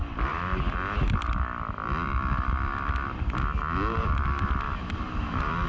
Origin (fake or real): real